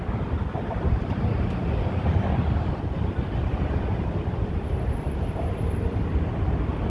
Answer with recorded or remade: recorded